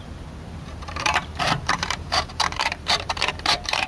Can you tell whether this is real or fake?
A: fake